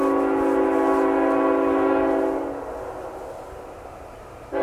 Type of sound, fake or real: real